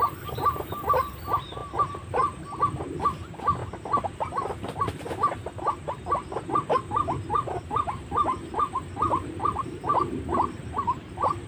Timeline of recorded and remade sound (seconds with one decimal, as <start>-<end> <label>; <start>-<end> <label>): 0.0-3.6 remade; 3.6-7.3 recorded; 7.3-11.5 remade